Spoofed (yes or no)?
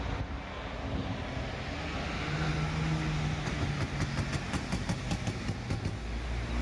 no